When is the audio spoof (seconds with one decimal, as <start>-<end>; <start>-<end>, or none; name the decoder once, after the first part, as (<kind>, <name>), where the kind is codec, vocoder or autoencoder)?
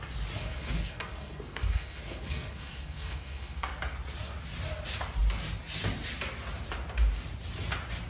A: 0.4-3.8 (codec, SNAC)